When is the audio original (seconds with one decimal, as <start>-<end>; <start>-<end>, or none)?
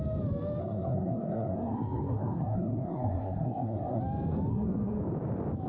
0.0-0.6; 4.0-4.5; 5.0-5.7